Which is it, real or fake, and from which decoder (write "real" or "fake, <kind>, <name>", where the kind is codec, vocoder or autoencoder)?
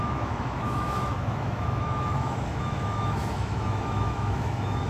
fake, autoencoder, DAC-VAE